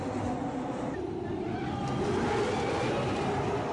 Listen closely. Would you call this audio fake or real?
real